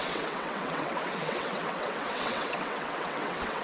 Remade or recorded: remade